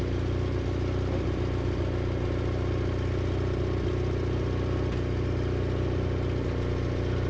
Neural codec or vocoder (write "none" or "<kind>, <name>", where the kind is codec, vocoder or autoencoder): none